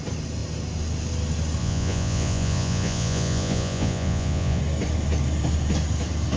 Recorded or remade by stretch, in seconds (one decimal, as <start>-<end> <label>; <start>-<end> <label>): 0.0-1.6 recorded; 1.6-4.6 remade; 4.6-6.4 recorded